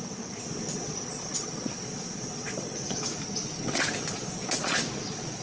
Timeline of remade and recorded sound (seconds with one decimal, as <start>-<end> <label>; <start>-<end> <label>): 0.0-0.7 recorded; 0.7-3.2 remade; 3.2-4.4 recorded; 4.4-5.4 remade